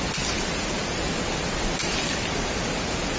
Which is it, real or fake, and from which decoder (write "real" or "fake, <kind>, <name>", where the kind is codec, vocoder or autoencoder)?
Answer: real